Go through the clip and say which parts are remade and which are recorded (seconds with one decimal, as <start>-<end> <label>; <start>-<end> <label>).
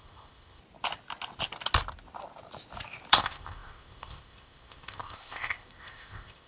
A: 0.0-0.6 remade; 0.6-3.1 recorded; 3.1-6.5 remade